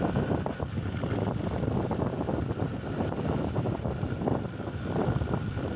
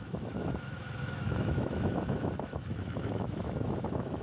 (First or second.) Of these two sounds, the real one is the first